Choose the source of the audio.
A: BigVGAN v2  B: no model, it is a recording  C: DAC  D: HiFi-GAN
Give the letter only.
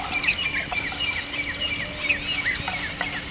B